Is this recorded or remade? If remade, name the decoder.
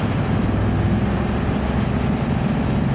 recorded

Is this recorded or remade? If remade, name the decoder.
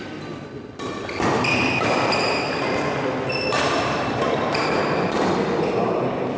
recorded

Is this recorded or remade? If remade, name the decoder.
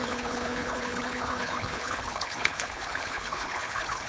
remade, codec, HILCodec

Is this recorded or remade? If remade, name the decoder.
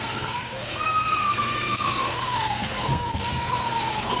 remade, codec, SNAC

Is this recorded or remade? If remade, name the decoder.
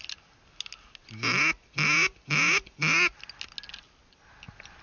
recorded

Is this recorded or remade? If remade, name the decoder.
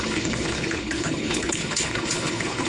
remade, codec, HILCodec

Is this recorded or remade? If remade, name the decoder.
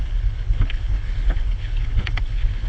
remade, codec, HILCodec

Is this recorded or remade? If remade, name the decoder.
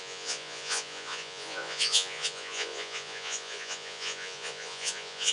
remade, vocoder, Vocos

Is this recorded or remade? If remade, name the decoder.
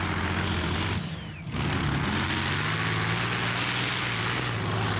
recorded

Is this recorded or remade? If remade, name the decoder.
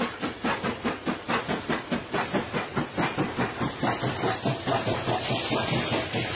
remade, vocoder, BigVGAN v2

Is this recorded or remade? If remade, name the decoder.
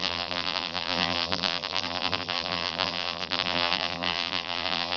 remade, vocoder, BigVGAN v2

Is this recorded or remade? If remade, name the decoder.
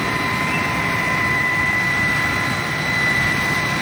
remade, vocoder, BigVGAN v2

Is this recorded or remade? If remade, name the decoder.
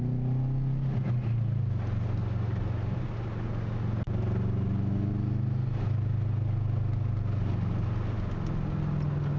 recorded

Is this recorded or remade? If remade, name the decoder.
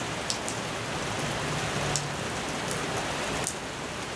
recorded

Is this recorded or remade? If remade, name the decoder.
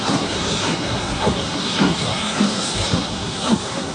remade, codec, SNAC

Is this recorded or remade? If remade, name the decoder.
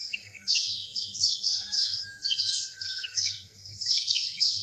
remade, codec, SNAC